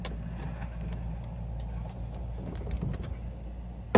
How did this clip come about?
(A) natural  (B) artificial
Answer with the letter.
A